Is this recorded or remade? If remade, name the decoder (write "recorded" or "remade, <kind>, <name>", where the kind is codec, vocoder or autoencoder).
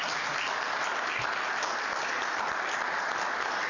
recorded